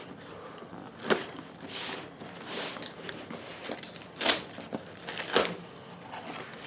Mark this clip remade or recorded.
recorded